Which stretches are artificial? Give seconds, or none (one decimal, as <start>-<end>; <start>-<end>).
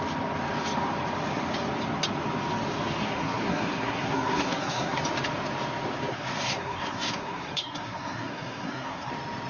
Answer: 3.0-5.0; 6.1-9.1